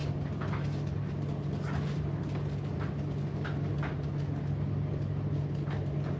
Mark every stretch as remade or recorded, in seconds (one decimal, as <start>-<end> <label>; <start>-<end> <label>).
0.0-6.2 recorded